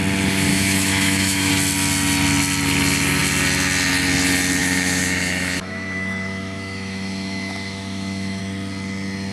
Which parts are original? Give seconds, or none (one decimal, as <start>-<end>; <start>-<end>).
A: 0.0-0.5; 1.5-4.6; 8.4-9.3